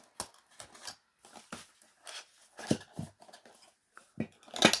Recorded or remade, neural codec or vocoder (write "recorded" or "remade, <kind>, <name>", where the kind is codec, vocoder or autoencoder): recorded